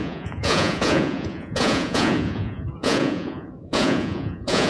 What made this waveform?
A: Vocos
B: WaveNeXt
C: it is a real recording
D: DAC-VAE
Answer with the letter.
A